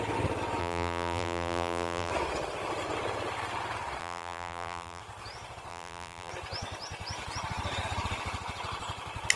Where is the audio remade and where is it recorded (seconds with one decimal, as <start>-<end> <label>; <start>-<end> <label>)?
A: 0.0-0.6 recorded; 0.6-2.1 remade; 2.1-4.0 recorded; 4.0-5.0 remade; 5.0-5.7 recorded; 5.7-6.3 remade; 6.3-9.4 recorded